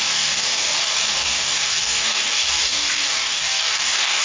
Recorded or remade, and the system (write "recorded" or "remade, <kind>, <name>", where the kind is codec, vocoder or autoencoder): remade, codec, DAC